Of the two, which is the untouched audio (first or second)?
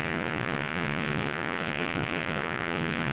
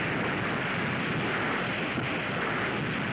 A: second